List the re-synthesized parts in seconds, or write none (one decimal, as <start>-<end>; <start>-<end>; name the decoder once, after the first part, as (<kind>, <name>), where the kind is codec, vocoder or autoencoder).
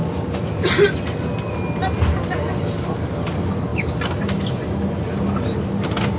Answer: none